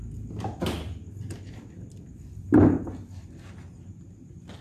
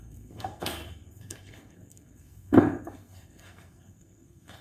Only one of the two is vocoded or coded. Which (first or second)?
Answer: second